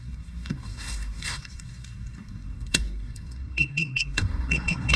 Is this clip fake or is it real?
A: fake